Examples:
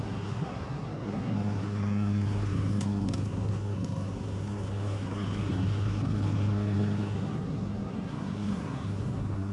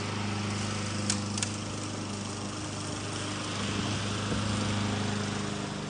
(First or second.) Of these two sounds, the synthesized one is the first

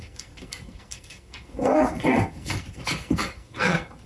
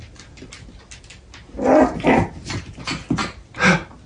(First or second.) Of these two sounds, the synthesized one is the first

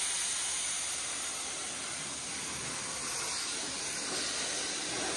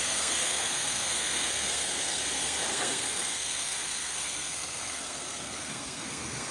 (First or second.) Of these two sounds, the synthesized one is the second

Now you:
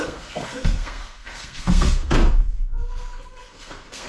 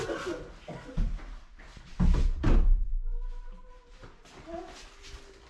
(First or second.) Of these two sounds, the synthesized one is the first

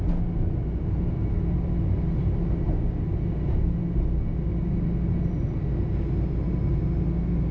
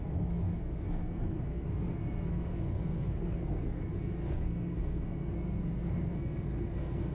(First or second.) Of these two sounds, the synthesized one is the second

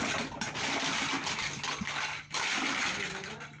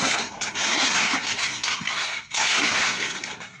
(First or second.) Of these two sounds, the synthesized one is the second